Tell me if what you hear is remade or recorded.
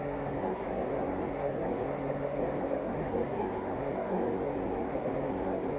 remade